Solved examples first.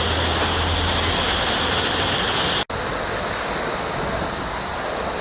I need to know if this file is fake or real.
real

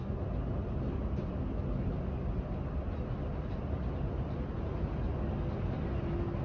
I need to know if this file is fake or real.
real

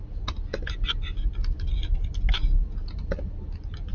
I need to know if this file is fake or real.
real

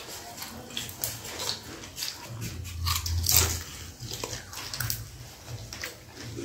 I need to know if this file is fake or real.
real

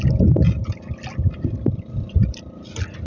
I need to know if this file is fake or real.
real